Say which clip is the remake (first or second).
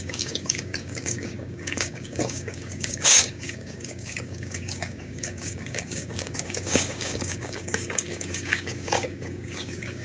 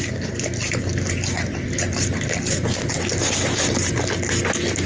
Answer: first